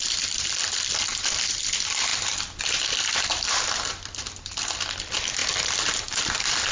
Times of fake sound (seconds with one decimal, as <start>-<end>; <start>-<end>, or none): 0.0-5.4; 6.0-6.7